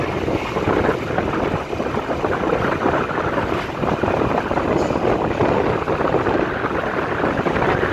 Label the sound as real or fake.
real